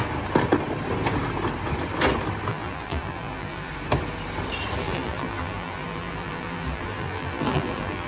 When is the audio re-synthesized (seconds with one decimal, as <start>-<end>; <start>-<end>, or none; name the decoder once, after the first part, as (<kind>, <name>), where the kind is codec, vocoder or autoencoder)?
2.5-3.7 (vocoder, BigVGAN v2); 4.8-8.1